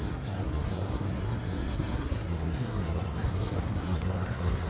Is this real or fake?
fake